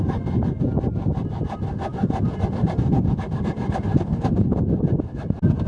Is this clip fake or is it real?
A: real